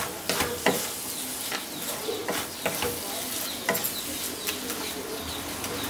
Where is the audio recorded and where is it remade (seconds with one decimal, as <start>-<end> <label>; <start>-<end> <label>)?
0.0-5.9 recorded